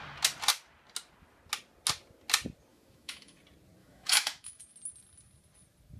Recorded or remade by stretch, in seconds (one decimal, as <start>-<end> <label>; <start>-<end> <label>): 0.0-2.7 recorded; 2.7-3.4 remade; 3.4-3.8 recorded; 3.8-4.7 remade; 4.7-6.0 recorded